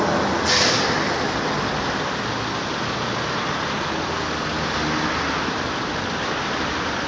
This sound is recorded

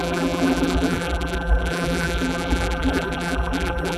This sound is remade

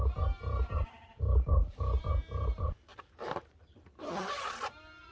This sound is remade